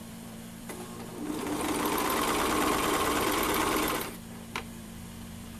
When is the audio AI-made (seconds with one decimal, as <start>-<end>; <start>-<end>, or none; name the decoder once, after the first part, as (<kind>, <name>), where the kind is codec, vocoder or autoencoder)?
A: 0.0-1.1 (vocoder, BigVGAN v2); 4.5-5.6

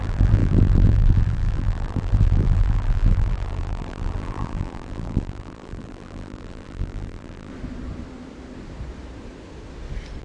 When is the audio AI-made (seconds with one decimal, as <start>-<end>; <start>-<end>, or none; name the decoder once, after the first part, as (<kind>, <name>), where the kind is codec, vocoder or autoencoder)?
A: 0.0-7.5 (vocoder, BigVGAN v2)

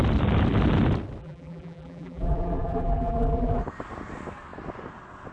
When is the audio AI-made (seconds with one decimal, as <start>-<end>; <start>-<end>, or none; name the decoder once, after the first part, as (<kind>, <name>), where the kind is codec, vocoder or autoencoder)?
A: 1.2-3.6 (vocoder, BigVGAN v2)